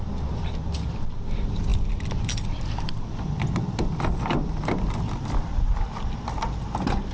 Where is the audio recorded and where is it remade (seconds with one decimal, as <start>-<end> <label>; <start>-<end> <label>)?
0.0-7.1 recorded